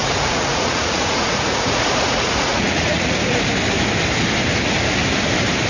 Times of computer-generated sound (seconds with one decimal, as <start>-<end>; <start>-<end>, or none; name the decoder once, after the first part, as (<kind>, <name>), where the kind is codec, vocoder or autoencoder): 0.0-3.1 (vocoder, Vocos)